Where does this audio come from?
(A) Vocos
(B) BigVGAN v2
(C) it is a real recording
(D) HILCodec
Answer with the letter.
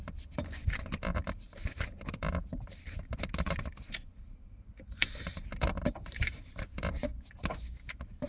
B